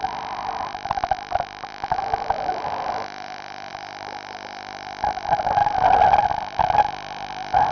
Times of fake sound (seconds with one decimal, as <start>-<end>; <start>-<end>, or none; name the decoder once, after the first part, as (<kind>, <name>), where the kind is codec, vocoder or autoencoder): none